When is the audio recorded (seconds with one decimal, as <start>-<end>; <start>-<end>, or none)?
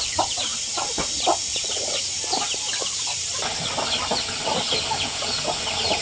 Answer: 0.0-6.0